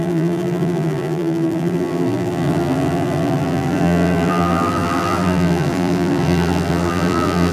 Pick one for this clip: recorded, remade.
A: remade